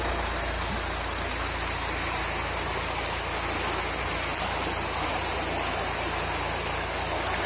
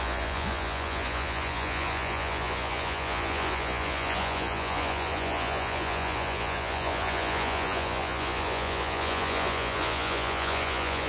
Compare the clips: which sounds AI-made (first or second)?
second